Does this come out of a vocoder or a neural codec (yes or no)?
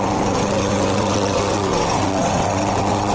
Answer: yes